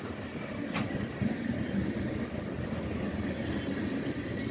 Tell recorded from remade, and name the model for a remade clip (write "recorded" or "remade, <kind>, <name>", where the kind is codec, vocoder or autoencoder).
recorded